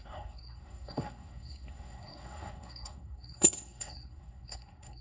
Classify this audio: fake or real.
fake